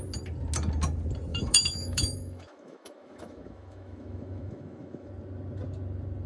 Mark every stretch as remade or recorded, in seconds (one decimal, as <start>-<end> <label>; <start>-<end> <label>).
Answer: 0.0-1.3 recorded; 1.3-5.1 remade; 5.1-6.3 recorded